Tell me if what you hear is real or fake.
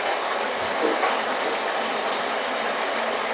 real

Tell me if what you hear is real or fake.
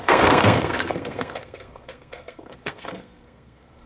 fake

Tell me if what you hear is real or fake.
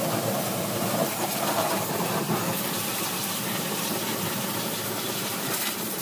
fake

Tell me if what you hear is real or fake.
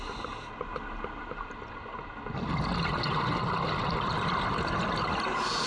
real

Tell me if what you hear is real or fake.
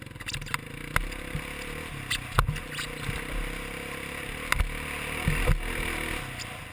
real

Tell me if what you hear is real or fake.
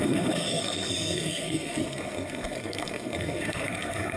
fake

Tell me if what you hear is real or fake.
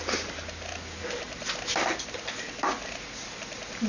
real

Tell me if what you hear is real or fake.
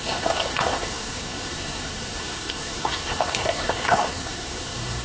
fake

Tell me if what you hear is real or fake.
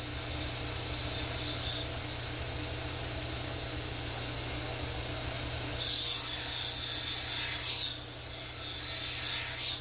real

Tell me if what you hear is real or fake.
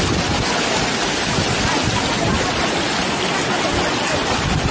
real